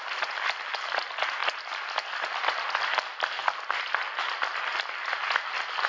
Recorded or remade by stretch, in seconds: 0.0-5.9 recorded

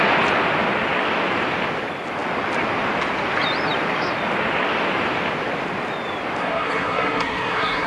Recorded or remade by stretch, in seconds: 0.0-6.4 recorded; 6.4-7.9 remade

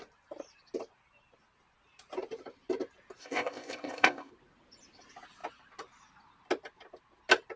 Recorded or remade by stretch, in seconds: 0.0-3.2 recorded; 3.2-4.3 remade; 4.3-7.6 recorded

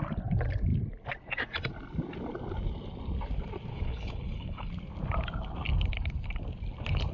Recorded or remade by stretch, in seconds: 0.0-3.7 recorded; 3.7-4.7 remade; 4.7-7.1 recorded

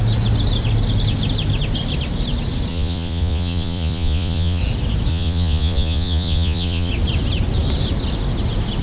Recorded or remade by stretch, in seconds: 0.0-2.7 recorded; 2.7-4.6 remade; 4.6-5.1 recorded; 5.1-6.9 remade; 6.9-8.8 recorded

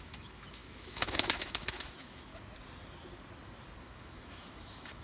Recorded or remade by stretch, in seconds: 0.0-2.3 remade; 2.3-3.8 recorded; 3.8-5.0 remade

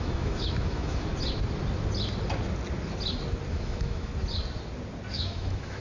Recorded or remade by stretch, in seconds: 0.0-1.1 remade; 1.1-3.5 recorded; 3.5-4.1 remade; 4.1-5.1 recorded; 5.1-5.8 remade